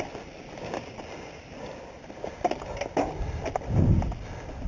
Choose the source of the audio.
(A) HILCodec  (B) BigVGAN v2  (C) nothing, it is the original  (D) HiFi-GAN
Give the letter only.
C